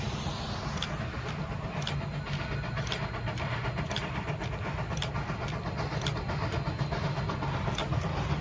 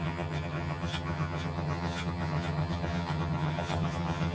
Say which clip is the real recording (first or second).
first